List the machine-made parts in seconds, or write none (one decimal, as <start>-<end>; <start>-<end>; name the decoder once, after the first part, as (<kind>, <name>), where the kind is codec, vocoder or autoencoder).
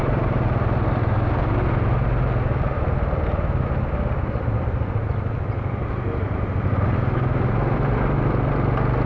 none